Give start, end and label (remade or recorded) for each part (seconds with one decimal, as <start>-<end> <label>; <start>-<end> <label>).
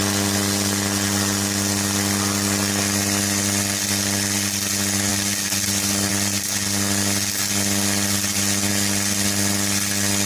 0.0-10.3 recorded